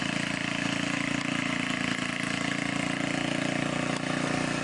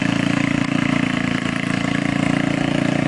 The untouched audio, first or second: first